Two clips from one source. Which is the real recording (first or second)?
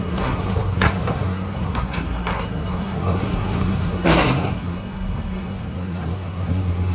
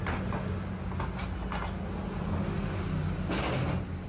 second